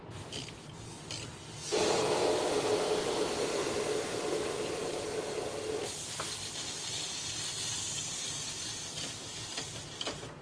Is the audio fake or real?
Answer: real